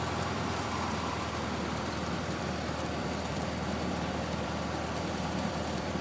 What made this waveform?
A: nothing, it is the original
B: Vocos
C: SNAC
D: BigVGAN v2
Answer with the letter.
D